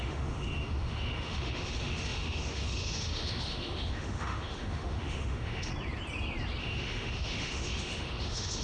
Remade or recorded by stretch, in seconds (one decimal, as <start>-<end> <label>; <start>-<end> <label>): 0.0-5.7 remade; 5.7-6.6 recorded; 6.6-8.6 remade